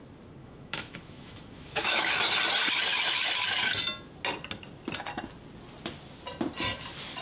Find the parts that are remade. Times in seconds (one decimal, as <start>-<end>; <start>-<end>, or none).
0.4-2.1